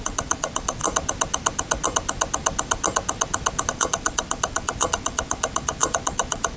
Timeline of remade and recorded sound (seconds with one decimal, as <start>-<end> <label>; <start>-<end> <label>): 0.0-0.8 remade; 0.8-3.7 recorded; 3.7-6.6 remade